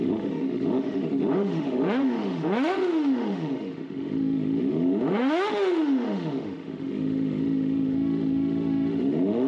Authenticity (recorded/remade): remade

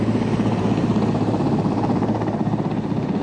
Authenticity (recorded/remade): recorded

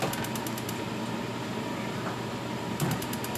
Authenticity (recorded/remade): recorded